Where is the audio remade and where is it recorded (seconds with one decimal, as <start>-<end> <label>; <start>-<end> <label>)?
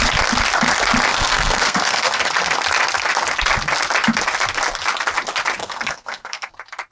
0.0-1.1 recorded; 1.1-2.2 remade; 2.2-5.6 recorded; 5.6-6.5 remade; 6.5-6.9 recorded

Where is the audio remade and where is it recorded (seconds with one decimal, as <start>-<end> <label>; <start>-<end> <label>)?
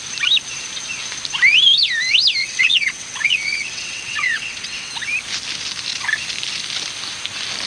0.0-2.4 recorded; 2.4-4.9 remade; 4.9-7.7 recorded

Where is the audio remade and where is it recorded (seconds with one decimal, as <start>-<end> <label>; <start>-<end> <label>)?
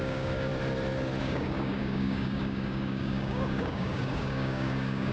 0.0-0.5 remade; 0.5-1.2 recorded; 1.2-5.1 remade